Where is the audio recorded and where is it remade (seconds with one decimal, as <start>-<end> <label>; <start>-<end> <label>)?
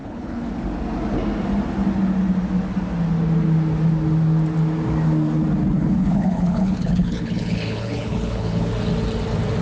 0.0-0.5 remade; 0.5-5.8 recorded; 5.8-8.7 remade; 8.7-9.6 recorded